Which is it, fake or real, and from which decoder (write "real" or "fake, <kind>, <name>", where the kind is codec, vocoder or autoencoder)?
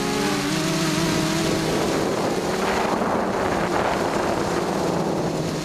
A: real